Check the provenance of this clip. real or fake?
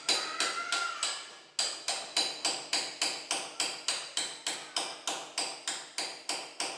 real